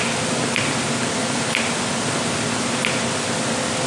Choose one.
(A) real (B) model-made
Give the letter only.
A